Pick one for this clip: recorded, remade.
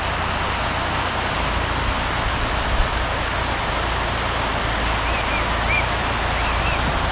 recorded